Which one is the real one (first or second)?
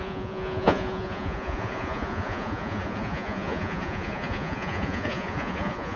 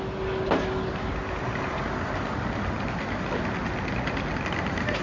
second